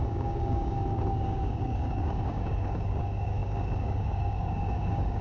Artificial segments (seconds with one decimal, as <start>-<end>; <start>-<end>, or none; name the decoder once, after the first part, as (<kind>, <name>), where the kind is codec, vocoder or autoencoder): 0.0-5.2 (codec, DAC)